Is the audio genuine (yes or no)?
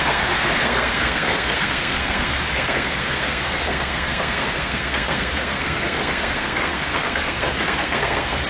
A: no